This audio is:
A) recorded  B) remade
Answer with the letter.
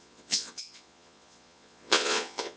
B